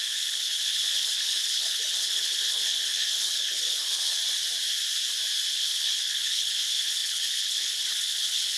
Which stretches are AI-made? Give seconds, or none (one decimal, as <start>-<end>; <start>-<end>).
0.0-4.2; 5.5-8.6